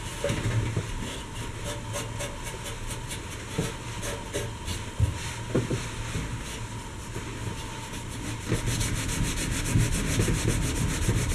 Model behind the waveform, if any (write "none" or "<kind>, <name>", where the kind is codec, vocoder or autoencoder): none